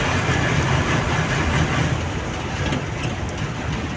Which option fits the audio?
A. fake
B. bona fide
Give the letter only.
B